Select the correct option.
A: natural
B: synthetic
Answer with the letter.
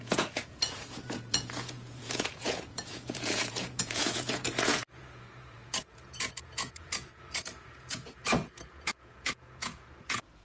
B